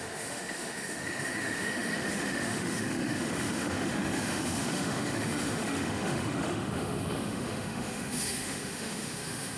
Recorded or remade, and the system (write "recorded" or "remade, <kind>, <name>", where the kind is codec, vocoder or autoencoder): remade, autoencoder, DAC-VAE